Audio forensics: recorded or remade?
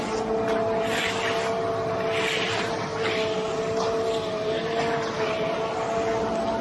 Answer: recorded